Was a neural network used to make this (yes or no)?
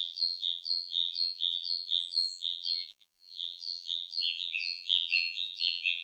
yes